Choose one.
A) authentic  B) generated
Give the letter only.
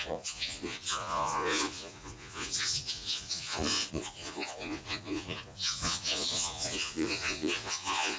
B